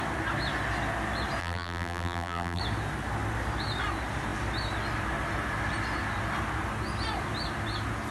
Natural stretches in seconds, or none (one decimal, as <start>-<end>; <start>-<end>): 0.0-1.4; 2.6-8.1